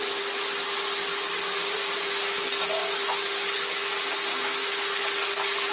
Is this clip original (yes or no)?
yes